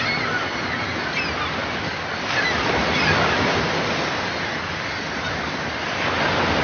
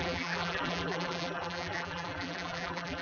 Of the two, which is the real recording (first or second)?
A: first